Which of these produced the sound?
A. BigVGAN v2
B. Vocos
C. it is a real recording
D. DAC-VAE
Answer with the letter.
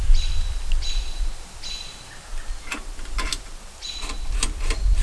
C